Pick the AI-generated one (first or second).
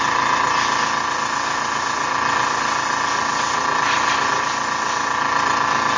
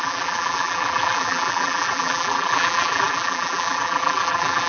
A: second